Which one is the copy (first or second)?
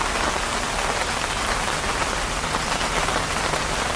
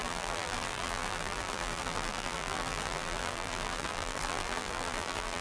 second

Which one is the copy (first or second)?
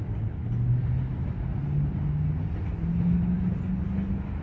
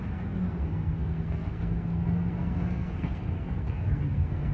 second